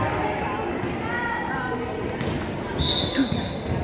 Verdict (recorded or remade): recorded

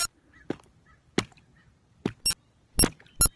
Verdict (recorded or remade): recorded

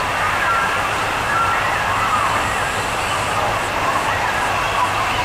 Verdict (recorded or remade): recorded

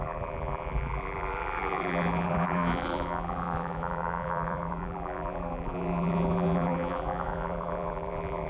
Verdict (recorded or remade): remade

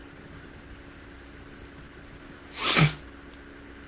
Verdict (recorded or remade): recorded